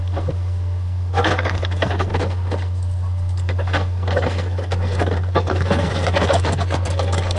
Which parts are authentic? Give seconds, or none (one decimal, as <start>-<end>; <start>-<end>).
none